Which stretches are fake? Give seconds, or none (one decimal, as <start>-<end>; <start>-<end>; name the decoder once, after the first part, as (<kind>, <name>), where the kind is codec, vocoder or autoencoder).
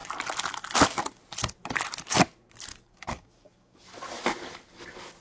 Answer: 2.7-3.8 (codec, DAC)